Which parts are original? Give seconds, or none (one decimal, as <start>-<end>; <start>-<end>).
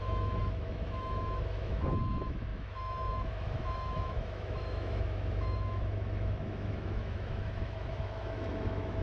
none